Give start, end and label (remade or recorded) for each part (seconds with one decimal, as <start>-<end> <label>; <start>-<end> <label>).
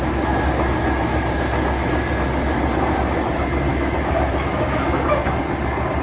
0.0-3.7 recorded; 3.7-5.1 remade; 5.1-6.0 recorded